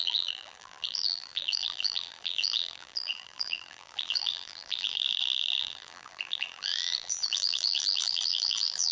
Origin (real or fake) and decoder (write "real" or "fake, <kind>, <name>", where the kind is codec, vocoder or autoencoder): fake, vocoder, BigVGAN v2